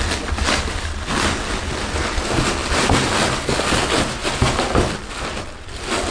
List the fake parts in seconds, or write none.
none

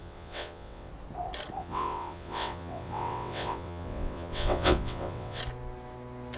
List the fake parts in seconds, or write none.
0.0-0.9 (vocoder, WaveNeXt); 1.6-5.4

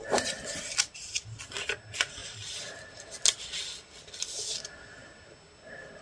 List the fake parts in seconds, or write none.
none

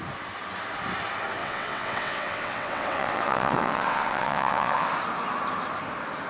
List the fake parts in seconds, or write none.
1.4-4.9 (vocoder, WaveNeXt)